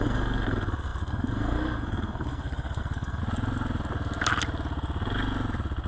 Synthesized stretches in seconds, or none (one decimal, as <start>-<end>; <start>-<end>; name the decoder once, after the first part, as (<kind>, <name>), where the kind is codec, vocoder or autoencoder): 0.0-3.2 (codec, SNAC)